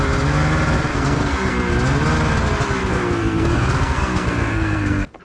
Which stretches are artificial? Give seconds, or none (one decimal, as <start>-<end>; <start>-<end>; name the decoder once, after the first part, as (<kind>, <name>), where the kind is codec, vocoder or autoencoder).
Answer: 0.9-1.7 (codec, SNAC); 2.8-5.2